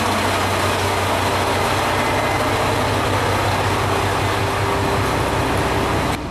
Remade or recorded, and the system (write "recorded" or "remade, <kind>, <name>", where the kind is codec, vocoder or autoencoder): recorded